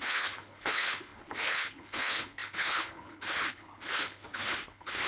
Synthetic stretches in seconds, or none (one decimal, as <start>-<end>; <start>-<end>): 0.0-5.1